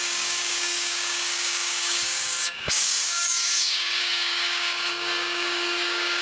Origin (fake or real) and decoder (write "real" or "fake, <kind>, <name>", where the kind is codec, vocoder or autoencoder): fake, codec, DAC